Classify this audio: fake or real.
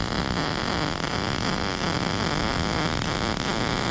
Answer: real